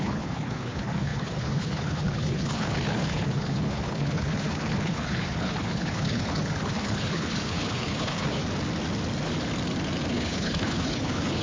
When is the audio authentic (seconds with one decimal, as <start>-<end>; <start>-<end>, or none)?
8.4-10.1

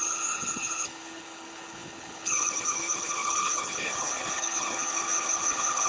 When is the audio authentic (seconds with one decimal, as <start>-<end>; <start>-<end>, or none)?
none

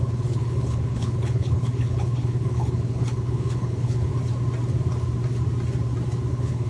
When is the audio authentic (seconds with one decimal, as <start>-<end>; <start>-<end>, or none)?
4.1-6.3